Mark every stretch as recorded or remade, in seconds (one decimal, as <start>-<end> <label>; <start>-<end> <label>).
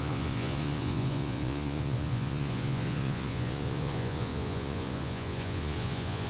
0.0-6.3 remade